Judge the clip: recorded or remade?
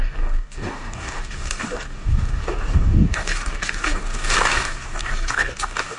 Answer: remade